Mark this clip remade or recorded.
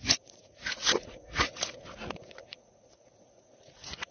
remade